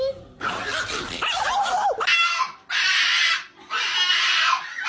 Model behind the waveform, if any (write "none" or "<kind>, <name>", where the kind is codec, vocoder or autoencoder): none